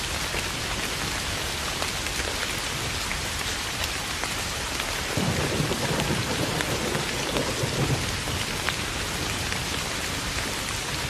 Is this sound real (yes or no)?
yes